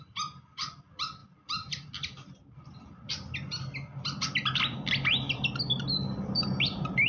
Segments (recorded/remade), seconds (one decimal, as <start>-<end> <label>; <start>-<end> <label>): 0.0-7.1 recorded